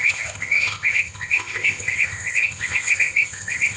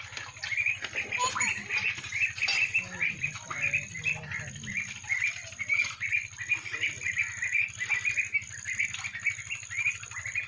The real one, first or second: second